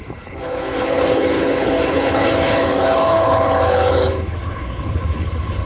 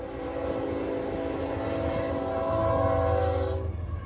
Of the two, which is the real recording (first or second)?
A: second